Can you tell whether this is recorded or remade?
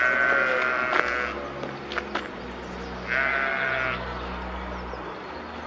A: recorded